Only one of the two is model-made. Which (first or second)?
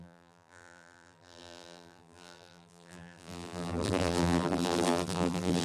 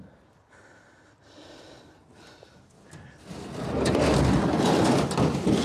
first